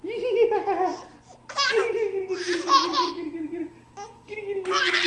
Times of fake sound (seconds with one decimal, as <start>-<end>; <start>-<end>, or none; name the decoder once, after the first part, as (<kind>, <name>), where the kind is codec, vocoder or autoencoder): none